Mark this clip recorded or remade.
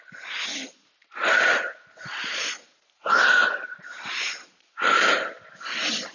recorded